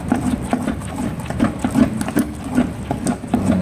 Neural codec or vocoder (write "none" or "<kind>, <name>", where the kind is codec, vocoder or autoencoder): none